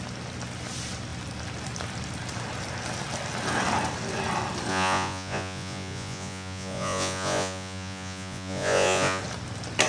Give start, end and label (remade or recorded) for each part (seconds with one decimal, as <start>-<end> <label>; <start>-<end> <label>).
0.0-4.7 recorded; 4.7-9.2 remade; 9.2-9.9 recorded